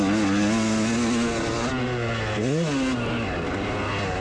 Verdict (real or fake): real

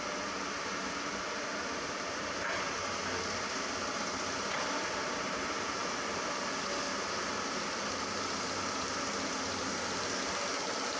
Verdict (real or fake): real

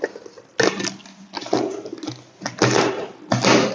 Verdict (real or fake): real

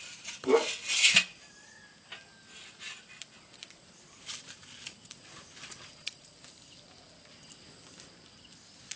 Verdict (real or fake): real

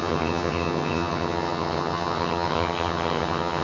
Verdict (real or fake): fake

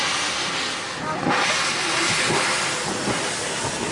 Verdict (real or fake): real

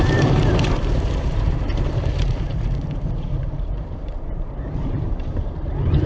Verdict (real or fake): fake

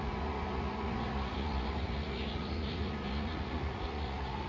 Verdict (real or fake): fake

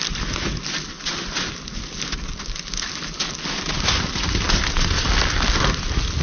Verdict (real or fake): real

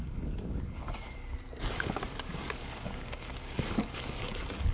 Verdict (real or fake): fake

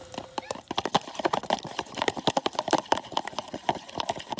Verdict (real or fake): real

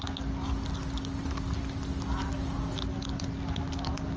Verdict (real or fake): real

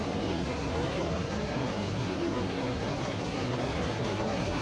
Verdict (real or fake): fake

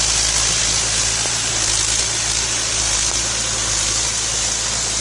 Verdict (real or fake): real